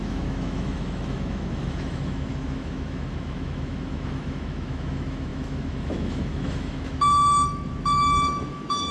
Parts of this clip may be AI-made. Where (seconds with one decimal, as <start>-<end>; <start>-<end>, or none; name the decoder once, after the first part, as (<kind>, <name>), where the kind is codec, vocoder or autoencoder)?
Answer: 0.0-8.9 (autoencoder, DAC-VAE)